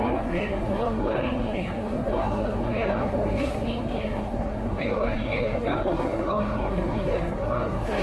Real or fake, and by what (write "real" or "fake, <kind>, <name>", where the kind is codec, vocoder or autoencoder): fake, codec, SNAC